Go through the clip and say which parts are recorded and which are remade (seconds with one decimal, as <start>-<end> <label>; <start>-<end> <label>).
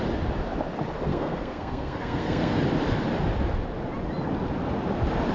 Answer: 0.0-1.1 recorded; 1.1-2.6 remade; 2.6-5.3 recorded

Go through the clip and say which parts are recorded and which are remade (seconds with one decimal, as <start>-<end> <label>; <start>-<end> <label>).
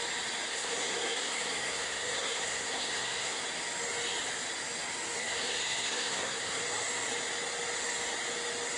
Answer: 0.0-0.5 recorded; 0.5-3.4 remade; 3.4-5.2 recorded; 5.2-6.6 remade; 6.6-8.8 recorded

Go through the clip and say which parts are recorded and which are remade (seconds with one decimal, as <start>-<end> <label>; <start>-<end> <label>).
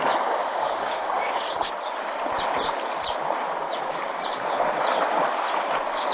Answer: 0.0-0.4 recorded; 0.4-1.7 remade; 1.7-6.1 recorded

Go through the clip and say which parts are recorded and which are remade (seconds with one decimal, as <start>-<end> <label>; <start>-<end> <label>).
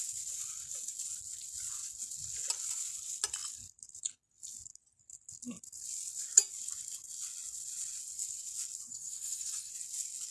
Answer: 0.0-8.9 recorded; 8.9-9.7 remade; 9.7-10.3 recorded